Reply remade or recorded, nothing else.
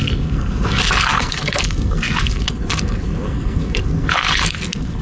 remade